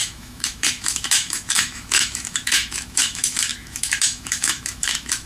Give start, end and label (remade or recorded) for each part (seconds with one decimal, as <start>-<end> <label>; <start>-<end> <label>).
0.0-5.3 remade